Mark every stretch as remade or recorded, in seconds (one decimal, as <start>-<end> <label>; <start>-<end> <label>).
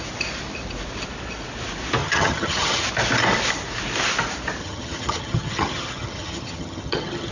0.0-2.0 recorded; 2.0-2.8 remade; 2.8-4.6 recorded; 4.6-7.3 remade